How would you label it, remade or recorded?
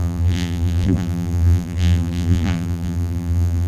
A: remade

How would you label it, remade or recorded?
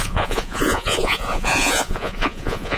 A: remade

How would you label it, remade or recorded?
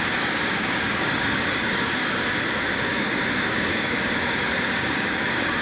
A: remade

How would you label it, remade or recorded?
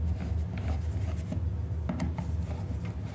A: recorded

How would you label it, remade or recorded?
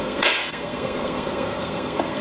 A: remade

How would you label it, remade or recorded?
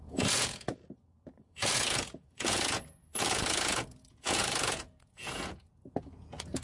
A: remade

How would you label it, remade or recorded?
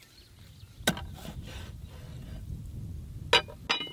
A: recorded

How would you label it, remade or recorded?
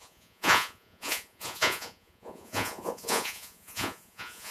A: remade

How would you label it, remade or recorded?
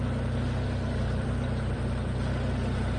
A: remade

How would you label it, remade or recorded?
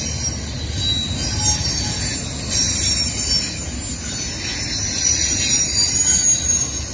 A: recorded